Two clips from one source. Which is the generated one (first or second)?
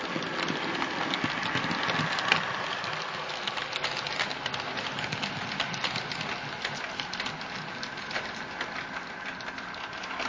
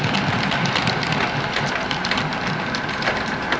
second